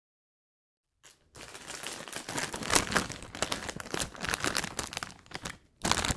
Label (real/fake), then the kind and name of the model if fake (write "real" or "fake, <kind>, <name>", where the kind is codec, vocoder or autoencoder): real